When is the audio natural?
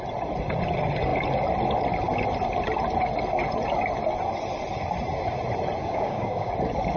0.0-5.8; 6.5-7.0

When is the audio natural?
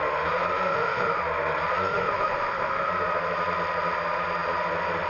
0.0-0.7; 1.2-1.9; 2.9-5.1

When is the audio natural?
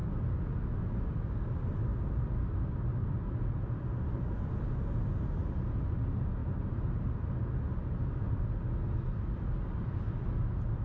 0.0-10.8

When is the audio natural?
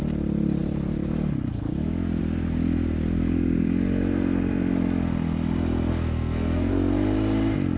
0.0-5.9; 6.7-7.8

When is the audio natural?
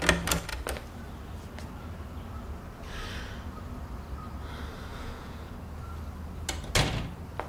0.0-4.9; 5.5-7.5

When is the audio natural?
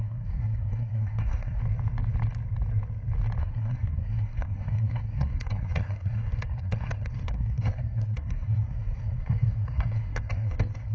1.6-3.4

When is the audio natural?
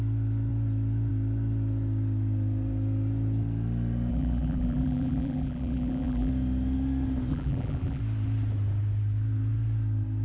0.0-4.1; 6.3-7.3; 8.0-10.2